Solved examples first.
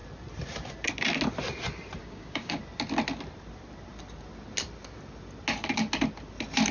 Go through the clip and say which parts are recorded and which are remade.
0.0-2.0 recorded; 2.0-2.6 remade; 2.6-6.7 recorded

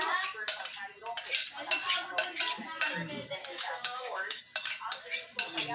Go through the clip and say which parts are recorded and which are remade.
0.0-3.5 recorded; 3.5-4.4 remade; 4.4-5.7 recorded

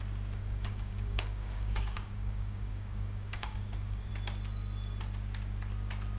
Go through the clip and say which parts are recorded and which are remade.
0.0-0.4 recorded; 0.4-4.1 remade; 4.1-6.2 recorded

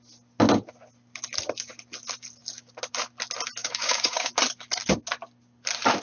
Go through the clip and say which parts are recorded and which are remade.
0.0-3.6 recorded; 3.6-4.3 remade; 4.3-6.0 recorded

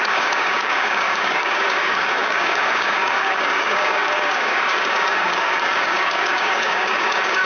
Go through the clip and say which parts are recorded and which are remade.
0.0-7.5 remade

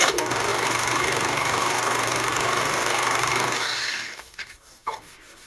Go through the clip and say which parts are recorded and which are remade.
0.0-5.5 remade

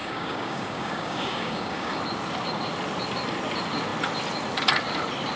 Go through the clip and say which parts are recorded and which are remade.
0.0-2.0 remade; 2.0-5.4 recorded